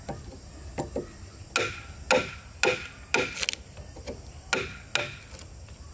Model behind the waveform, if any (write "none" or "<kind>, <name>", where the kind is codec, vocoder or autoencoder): none